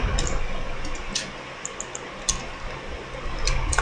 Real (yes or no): yes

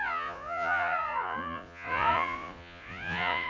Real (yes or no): no